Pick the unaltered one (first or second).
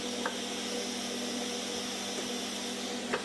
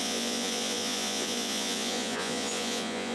first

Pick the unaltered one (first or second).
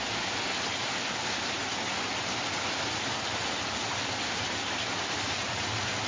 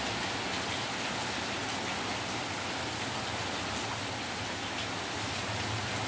second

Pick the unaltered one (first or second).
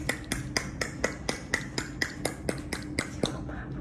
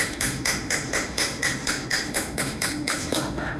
first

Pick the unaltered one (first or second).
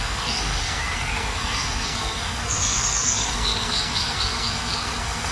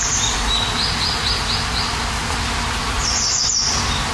second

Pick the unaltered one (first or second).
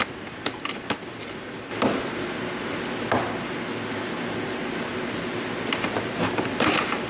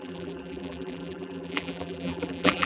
first